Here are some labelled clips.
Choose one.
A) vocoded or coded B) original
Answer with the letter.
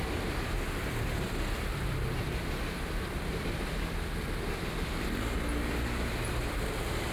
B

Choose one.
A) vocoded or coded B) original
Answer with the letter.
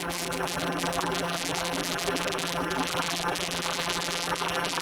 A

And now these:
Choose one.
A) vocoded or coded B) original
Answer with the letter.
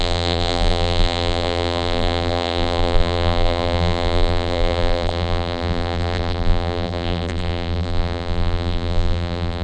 A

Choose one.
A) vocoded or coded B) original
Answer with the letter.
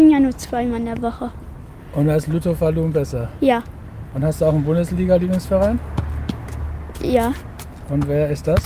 B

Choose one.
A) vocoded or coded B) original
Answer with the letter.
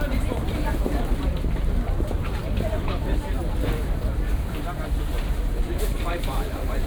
A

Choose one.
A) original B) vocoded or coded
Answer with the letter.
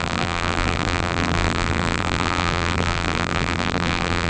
B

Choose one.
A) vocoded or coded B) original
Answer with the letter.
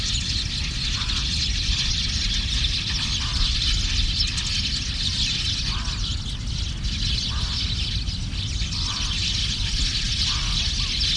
B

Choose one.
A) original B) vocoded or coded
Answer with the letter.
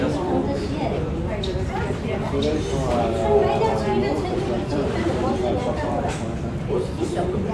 B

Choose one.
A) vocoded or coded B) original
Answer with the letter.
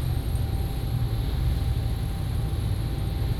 B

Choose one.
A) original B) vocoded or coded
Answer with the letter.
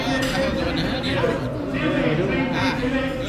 A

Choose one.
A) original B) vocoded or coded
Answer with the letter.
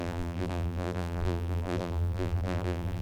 B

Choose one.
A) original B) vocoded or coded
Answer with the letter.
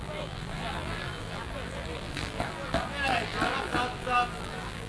B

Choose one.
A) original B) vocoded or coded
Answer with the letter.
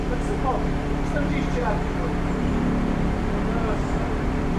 B